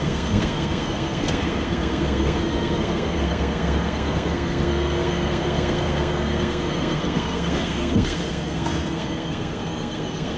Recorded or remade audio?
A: remade